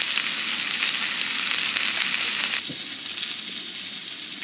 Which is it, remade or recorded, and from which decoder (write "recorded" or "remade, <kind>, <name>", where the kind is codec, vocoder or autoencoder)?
recorded